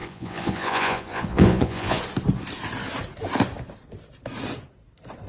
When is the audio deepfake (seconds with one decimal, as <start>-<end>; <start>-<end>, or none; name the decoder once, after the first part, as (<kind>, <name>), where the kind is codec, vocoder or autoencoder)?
0.0-2.0 (vocoder, Vocos)